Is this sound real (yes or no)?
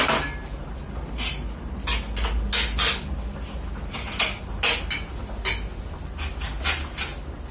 yes